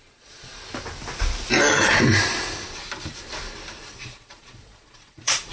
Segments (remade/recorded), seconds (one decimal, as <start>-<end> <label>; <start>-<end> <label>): 0.0-0.5 remade; 0.5-3.8 recorded; 3.8-5.5 remade